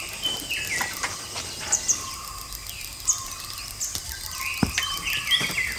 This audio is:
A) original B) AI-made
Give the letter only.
A